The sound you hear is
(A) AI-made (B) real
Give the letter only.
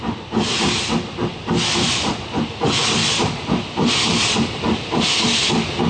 B